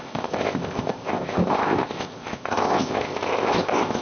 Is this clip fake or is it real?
fake